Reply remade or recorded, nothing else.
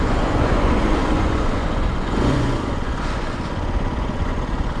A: remade